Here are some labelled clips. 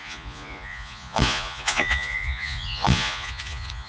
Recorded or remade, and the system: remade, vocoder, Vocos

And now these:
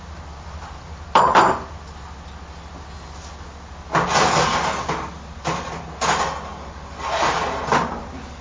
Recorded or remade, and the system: recorded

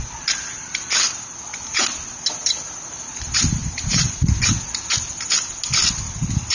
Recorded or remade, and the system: recorded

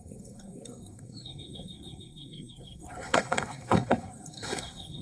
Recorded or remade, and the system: remade, codec, SNAC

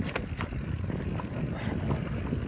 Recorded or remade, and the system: recorded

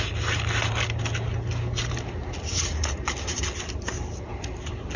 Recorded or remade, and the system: recorded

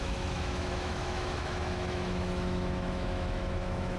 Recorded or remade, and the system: remade, autoencoder, DAC-VAE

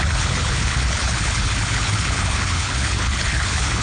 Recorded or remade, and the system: remade, codec, HILCodec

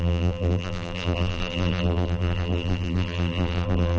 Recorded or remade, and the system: remade, vocoder, BigVGAN v2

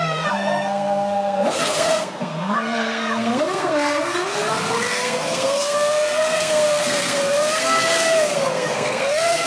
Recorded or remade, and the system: remade, codec, SNAC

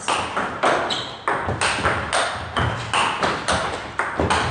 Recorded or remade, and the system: recorded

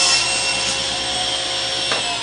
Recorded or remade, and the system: recorded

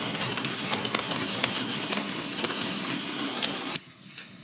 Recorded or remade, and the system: remade, codec, SNAC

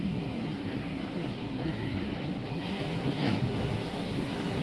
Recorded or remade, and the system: remade, codec, SNAC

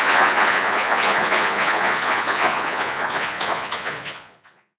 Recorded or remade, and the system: remade, vocoder, Vocos